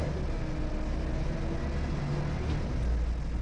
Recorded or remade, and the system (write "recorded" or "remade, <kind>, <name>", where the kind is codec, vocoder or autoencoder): recorded